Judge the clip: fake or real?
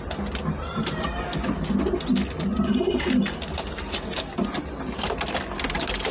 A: real